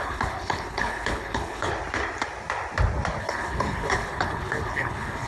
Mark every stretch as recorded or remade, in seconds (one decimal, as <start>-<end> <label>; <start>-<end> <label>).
0.0-1.7 remade; 1.7-3.2 recorded; 3.2-5.3 remade